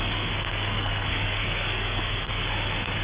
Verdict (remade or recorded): remade